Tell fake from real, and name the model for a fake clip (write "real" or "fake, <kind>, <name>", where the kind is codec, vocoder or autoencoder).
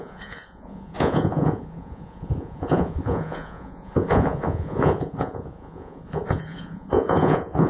fake, vocoder, Vocos